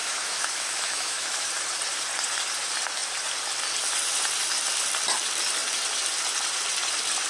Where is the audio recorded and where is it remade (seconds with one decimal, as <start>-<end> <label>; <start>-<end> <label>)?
0.0-1.5 remade; 1.5-7.3 recorded